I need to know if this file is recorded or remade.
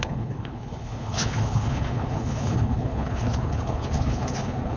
remade